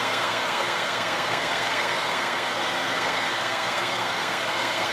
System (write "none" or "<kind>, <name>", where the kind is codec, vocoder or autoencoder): codec, SNAC